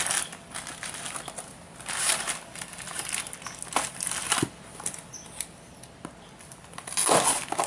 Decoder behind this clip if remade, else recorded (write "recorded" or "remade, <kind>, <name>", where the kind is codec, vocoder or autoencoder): recorded